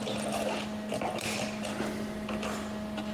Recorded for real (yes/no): yes